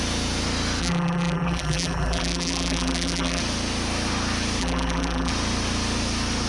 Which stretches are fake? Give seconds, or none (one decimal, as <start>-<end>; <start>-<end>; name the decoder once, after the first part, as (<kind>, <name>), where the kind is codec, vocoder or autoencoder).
0.8-3.4 (vocoder, BigVGAN v2); 4.6-5.3